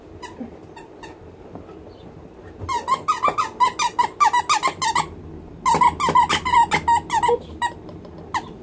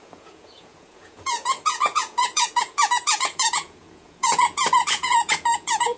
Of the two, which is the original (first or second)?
first